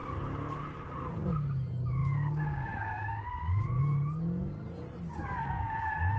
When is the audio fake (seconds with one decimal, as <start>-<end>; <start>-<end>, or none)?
2.0-3.8; 5.1-5.8